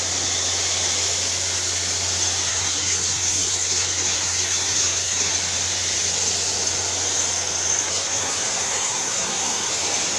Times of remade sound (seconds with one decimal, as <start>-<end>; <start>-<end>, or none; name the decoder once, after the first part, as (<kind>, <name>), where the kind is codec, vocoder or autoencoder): 2.5-5.3 (codec, SNAC); 7.8-9.7